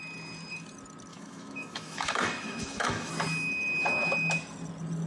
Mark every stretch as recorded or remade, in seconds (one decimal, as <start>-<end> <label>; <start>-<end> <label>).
0.0-1.1 recorded; 1.1-3.1 remade; 3.1-5.1 recorded